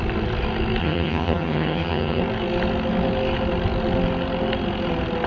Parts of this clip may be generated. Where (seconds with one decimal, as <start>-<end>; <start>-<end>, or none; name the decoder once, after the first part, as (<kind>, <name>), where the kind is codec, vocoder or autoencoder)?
0.8-2.2 (vocoder, HiFi-GAN)